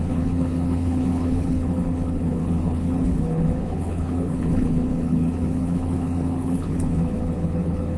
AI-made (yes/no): yes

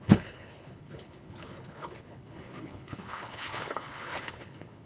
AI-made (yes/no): yes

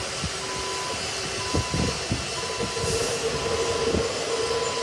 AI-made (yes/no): no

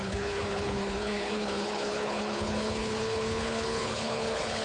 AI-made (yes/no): yes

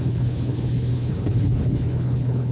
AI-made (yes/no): yes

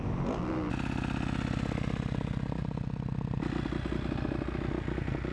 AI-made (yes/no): no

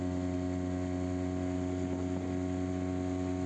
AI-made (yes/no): no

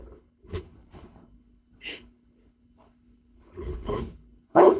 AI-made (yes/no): yes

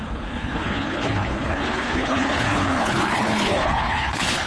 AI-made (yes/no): yes